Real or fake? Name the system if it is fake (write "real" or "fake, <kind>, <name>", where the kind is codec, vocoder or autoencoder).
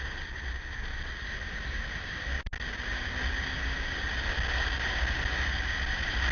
real